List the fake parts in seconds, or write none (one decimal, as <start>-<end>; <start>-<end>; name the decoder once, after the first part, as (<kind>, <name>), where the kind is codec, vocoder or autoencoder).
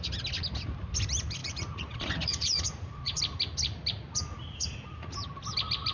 1.4-3.2 (vocoder, Vocos); 4.3-5.2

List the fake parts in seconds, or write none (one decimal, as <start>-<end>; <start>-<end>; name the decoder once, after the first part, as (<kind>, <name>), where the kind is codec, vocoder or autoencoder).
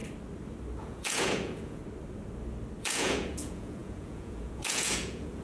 0.8-1.8 (vocoder, Vocos); 2.8-5.4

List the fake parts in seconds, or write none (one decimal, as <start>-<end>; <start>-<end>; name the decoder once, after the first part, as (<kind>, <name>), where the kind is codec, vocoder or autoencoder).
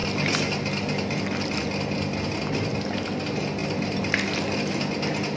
none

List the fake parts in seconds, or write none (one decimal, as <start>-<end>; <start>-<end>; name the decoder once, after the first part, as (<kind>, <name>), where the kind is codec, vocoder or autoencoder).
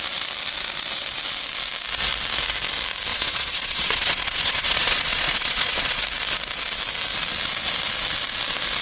3.1-6.0 (vocoder, Vocos)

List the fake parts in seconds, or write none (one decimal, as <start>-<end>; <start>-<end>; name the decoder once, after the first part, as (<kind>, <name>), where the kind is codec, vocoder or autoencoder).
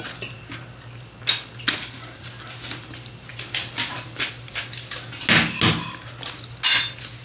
none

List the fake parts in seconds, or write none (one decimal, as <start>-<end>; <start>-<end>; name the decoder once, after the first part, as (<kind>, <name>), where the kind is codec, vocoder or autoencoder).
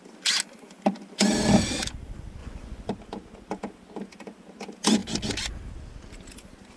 2.4-2.9 (vocoder, Vocos)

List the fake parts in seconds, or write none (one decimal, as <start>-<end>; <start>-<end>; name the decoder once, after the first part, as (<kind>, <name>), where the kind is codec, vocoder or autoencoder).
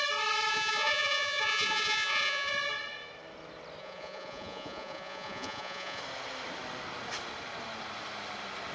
0.5-2.5 (vocoder, Vocos); 3.8-6.0